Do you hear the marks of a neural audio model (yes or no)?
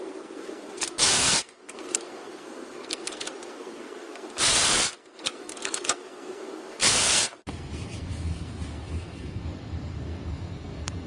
yes